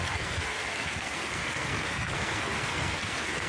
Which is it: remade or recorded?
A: remade